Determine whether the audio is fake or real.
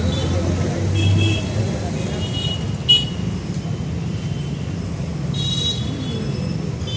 real